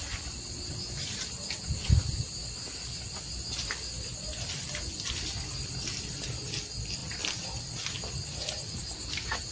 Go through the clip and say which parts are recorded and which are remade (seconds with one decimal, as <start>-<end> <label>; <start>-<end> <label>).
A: 0.0-9.5 recorded